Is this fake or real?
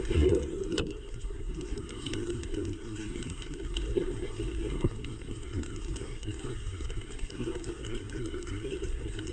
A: fake